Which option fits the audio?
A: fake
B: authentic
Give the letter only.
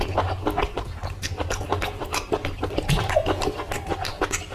B